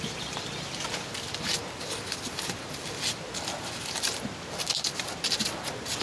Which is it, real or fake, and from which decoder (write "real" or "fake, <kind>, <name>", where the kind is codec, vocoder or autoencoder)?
real